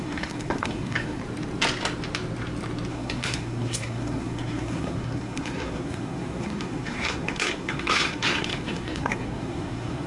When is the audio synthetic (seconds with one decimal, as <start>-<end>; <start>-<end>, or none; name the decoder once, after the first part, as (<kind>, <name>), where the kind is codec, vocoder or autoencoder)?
0.0-1.2 (codec, SNAC); 2.9-10.1